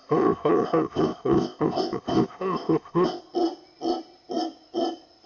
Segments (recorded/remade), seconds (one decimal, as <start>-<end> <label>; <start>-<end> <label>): 0.0-3.2 remade; 3.2-5.3 recorded